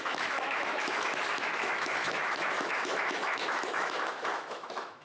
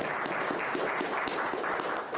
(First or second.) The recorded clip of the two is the second